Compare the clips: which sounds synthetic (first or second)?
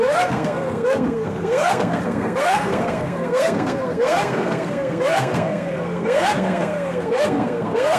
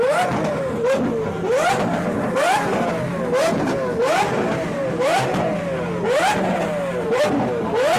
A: first